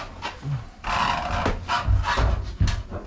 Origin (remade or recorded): recorded